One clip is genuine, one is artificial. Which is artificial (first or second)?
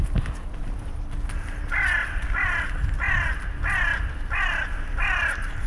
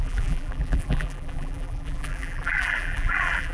second